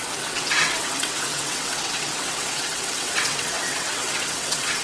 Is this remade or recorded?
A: remade